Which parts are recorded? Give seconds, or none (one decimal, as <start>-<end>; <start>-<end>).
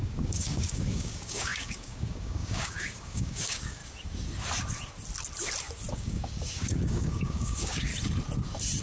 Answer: 3.8-5.9; 7.9-8.8